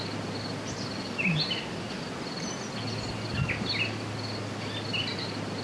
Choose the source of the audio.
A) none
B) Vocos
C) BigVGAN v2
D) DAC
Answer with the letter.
A